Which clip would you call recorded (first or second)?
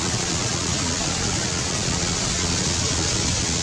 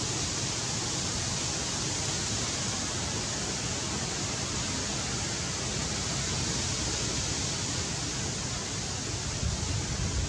second